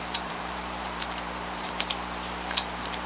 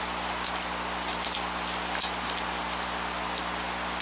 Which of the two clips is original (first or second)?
second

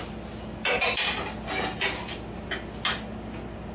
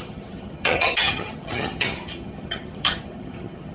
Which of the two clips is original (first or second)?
first